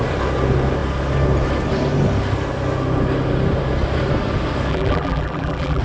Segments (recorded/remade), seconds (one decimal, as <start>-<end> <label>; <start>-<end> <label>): 0.0-4.7 recorded; 4.7-5.8 remade